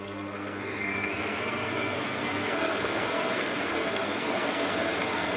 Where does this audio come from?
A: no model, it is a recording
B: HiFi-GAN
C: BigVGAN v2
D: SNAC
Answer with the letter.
D